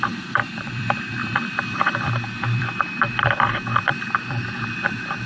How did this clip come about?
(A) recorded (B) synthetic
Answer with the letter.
B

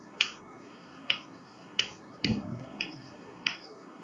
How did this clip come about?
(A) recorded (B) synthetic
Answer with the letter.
B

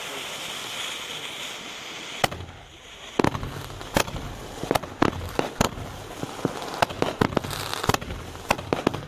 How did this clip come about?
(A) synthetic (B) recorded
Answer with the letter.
B